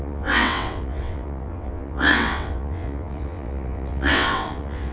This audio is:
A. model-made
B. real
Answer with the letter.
A